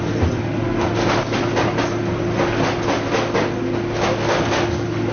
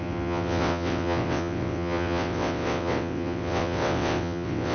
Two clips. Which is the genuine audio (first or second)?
first